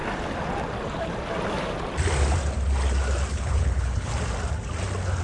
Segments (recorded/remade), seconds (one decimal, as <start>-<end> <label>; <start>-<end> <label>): 0.0-3.3 recorded; 3.3-4.1 remade; 4.1-5.2 recorded